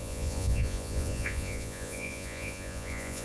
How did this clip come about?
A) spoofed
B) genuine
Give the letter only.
A